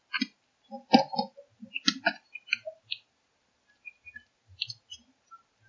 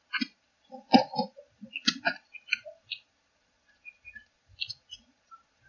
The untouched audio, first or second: first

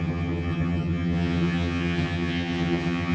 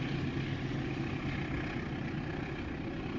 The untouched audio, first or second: second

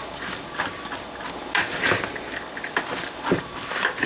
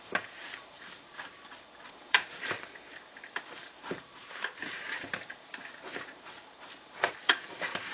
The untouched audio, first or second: first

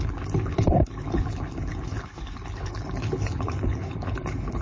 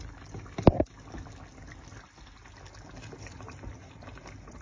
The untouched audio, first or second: second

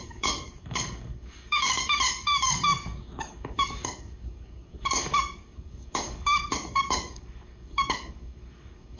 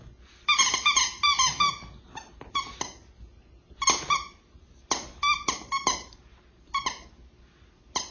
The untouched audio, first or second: second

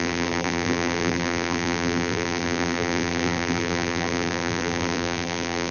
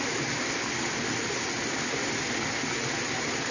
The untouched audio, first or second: second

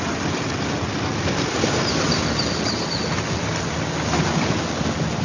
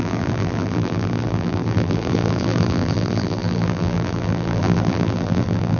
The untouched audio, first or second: first